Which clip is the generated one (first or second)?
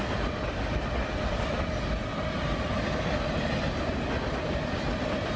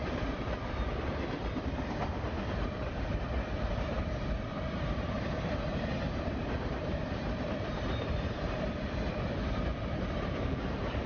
second